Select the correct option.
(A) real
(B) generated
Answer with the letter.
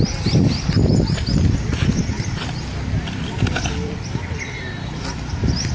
B